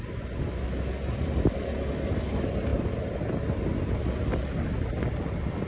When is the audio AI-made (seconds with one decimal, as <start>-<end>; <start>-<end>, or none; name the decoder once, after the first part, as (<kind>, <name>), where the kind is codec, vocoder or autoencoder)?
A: none